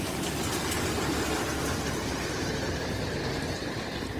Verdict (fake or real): real